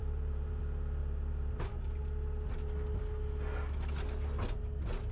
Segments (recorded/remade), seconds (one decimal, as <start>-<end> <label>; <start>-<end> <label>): 0.0-0.6 remade; 0.6-1.0 recorded; 1.0-1.6 remade; 1.6-5.1 recorded